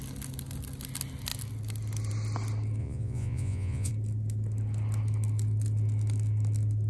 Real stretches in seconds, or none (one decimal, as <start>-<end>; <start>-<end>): 0.0-2.8; 3.9-6.9